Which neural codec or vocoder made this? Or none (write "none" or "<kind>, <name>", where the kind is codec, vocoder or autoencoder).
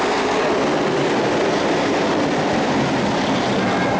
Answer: none